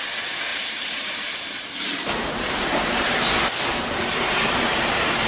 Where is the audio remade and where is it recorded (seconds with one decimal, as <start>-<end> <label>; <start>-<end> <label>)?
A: 0.0-0.5 recorded; 0.5-3.2 remade; 3.2-3.7 recorded; 3.7-5.3 remade